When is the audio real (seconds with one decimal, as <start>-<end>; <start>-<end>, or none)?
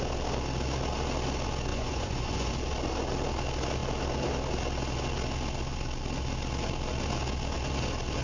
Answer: 0.0-1.7; 2.5-8.2